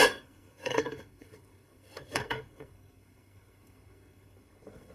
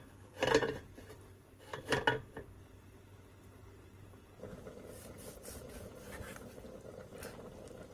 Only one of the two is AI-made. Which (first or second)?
first